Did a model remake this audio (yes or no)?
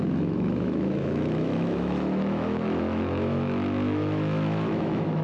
yes